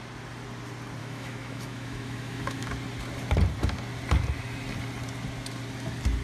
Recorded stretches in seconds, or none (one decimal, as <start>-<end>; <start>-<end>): 0.0-1.0; 2.7-6.2